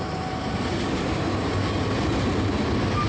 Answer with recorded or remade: recorded